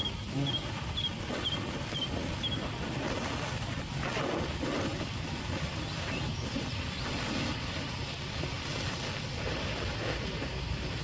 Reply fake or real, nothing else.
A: real